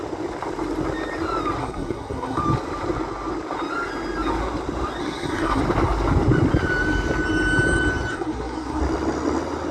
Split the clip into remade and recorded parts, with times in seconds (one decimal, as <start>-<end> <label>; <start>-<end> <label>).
0.0-1.6 recorded; 1.6-2.4 remade; 2.4-5.0 recorded; 5.0-5.6 remade; 5.6-8.1 recorded; 8.1-8.8 remade; 8.8-9.7 recorded